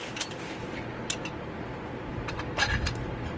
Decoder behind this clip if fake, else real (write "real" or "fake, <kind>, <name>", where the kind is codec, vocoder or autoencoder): real